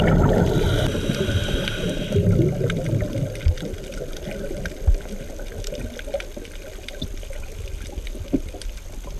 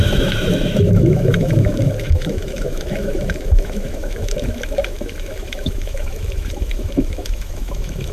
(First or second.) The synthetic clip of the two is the second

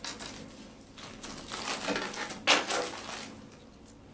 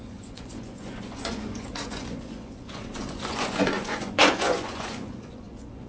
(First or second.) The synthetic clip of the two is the second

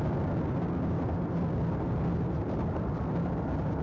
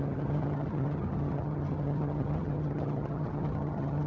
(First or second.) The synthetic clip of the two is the second